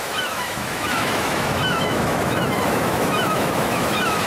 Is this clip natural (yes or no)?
no